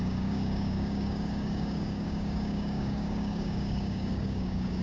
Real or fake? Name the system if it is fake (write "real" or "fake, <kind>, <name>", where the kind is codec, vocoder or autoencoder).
fake, codec, DAC